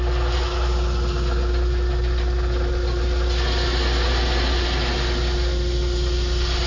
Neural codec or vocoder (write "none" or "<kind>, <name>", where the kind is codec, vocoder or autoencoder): none